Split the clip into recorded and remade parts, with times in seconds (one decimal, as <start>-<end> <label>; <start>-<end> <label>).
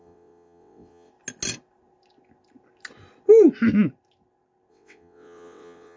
0.0-1.1 remade; 1.1-4.7 recorded; 4.7-6.0 remade